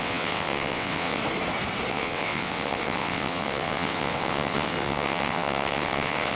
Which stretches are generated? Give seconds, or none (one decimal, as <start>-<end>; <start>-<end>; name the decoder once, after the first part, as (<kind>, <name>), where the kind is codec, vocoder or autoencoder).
0.0-1.2 (vocoder, WaveNeXt); 1.9-6.4